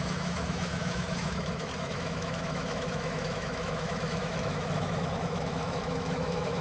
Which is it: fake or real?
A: fake